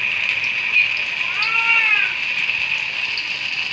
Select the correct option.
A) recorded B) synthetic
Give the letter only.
A